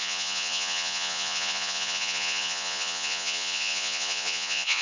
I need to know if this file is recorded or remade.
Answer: remade